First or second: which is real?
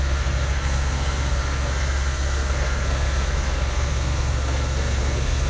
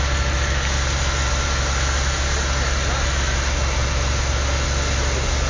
second